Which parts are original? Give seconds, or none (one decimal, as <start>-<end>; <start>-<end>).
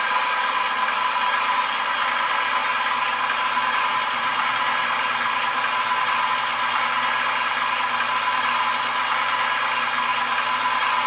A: 0.0-11.1